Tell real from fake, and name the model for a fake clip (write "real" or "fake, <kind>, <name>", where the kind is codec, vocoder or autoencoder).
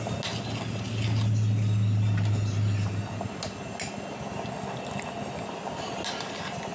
real